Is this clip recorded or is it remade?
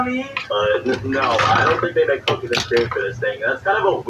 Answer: recorded